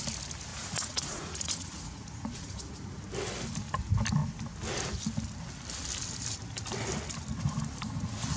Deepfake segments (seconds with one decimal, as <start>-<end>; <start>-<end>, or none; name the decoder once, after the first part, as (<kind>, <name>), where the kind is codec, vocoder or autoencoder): 0.5-3.0 (vocoder, Vocos)